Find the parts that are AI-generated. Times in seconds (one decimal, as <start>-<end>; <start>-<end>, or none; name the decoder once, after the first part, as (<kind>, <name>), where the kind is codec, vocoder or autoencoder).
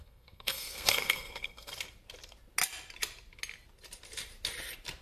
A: 0.0-1.7 (codec, SNAC)